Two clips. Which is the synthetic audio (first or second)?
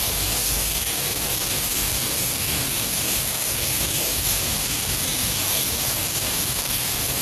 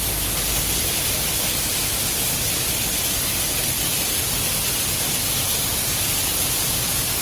first